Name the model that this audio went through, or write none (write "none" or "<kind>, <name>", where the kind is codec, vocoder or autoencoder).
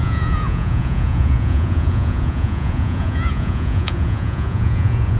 vocoder, Vocos